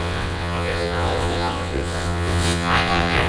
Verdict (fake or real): fake